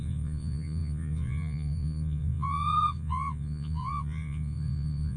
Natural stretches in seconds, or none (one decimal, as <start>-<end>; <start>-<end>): none